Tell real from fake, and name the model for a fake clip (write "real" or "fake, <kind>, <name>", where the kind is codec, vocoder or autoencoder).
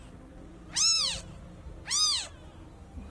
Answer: real